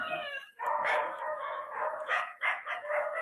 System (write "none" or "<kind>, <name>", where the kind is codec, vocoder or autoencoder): codec, DAC